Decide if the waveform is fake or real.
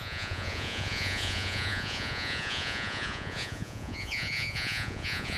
fake